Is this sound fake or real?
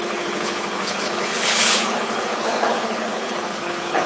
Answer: fake